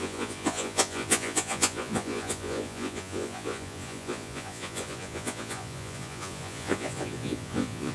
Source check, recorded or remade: remade